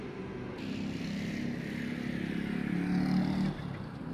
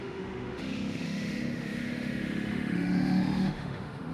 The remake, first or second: second